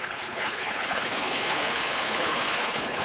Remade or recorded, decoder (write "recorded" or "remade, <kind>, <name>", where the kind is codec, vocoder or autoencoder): remade, codec, HILCodec